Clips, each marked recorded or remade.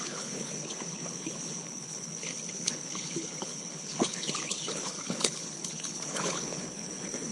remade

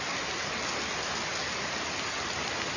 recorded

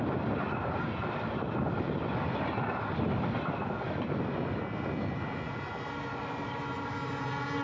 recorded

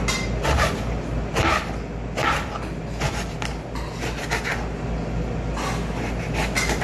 recorded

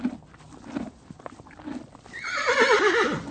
recorded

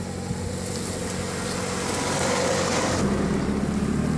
recorded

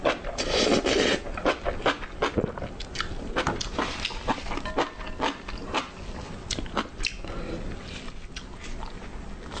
recorded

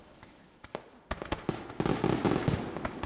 recorded